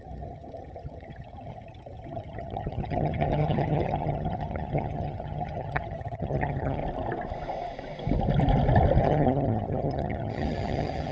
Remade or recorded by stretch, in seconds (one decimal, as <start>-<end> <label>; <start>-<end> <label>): 0.0-6.8 remade; 6.8-9.0 recorded; 9.0-11.1 remade